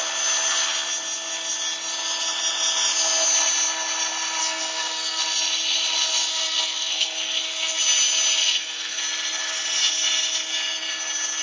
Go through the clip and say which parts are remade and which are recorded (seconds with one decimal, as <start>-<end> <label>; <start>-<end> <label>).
0.0-4.4 recorded; 4.4-5.2 remade; 5.2-6.3 recorded; 6.3-7.8 remade; 7.8-8.4 recorded; 8.4-9.0 remade; 9.0-11.4 recorded